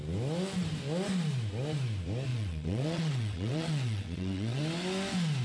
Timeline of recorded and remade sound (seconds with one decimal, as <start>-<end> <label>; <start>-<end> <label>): 0.0-2.3 recorded; 2.3-4.6 remade; 4.6-5.4 recorded